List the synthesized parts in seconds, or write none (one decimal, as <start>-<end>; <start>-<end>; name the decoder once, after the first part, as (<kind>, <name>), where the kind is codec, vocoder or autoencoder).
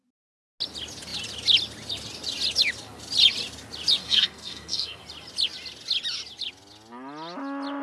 4.0-5.0 (codec, SNAC)